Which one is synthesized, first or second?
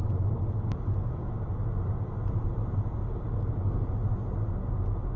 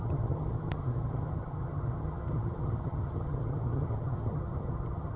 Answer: second